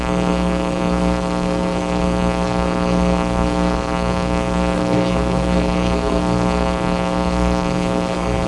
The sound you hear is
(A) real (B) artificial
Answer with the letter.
B